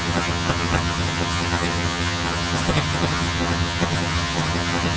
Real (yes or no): no